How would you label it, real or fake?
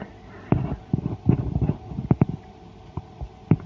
real